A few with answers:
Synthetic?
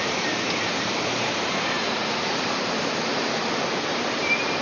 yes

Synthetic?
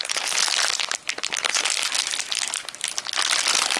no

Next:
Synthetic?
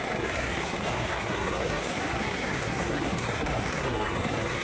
yes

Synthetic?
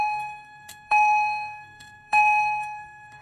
yes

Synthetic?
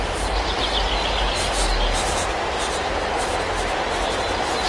no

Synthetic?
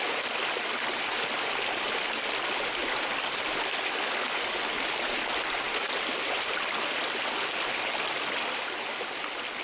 no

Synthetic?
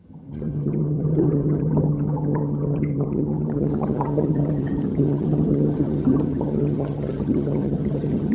yes